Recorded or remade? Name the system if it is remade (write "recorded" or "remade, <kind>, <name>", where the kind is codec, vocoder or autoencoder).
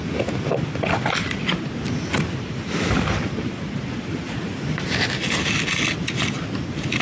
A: recorded